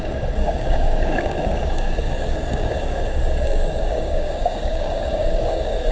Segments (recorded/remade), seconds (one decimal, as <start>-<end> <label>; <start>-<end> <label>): 0.0-5.9 remade